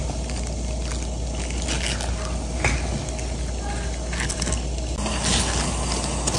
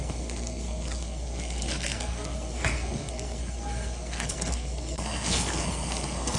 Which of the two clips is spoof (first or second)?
second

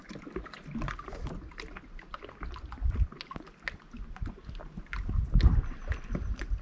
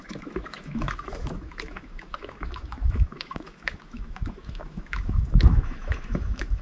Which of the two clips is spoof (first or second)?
second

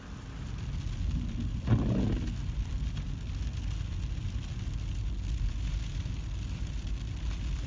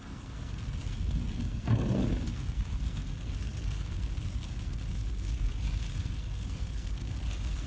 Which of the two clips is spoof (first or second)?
second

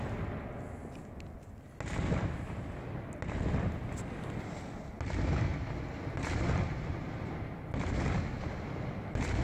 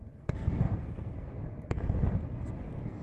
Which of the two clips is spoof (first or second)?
second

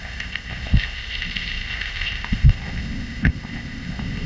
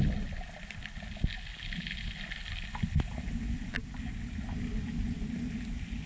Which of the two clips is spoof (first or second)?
first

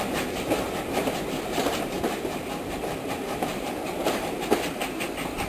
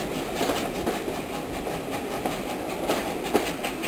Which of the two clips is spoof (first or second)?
first